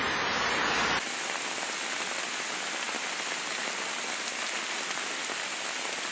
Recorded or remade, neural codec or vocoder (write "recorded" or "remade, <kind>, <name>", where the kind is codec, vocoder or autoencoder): recorded